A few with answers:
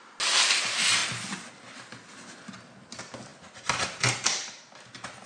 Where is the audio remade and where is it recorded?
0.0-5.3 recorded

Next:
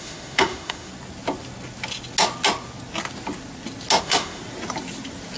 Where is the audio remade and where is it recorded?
0.0-0.9 remade; 0.9-4.0 recorded; 4.0-4.4 remade; 4.4-5.4 recorded